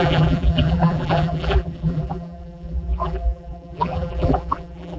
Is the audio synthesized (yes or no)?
yes